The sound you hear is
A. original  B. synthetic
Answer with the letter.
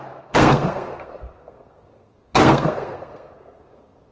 B